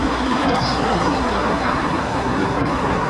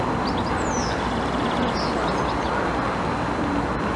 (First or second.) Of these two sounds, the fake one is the first